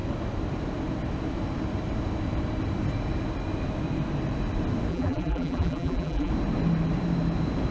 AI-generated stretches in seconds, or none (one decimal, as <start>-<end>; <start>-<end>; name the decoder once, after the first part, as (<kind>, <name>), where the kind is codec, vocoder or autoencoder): 4.9-6.3 (vocoder, BigVGAN v2)